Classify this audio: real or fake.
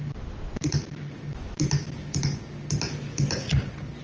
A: real